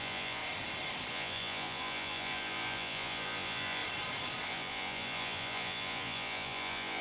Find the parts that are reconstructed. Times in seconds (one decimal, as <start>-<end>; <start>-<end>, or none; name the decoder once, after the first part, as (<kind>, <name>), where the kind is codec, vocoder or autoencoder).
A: 0.0-0.4 (vocoder, Vocos); 1.1-3.8; 4.5-7.0